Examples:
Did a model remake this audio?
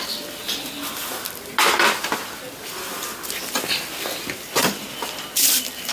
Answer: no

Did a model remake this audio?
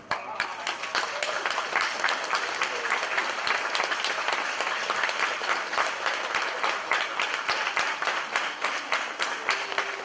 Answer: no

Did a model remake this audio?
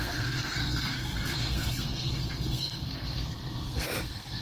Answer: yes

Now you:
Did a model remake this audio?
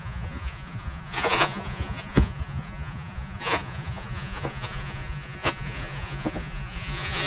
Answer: yes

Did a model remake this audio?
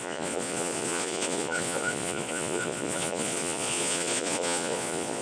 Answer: yes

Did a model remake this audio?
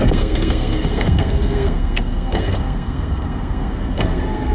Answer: yes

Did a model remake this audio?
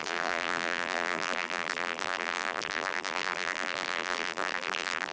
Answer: yes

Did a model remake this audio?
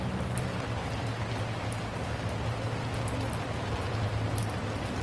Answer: no